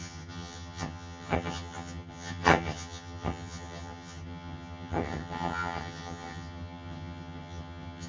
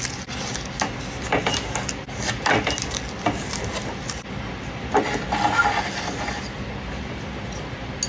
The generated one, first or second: first